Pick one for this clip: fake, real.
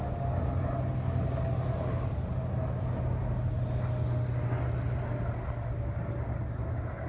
real